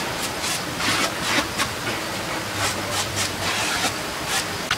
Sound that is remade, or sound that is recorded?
recorded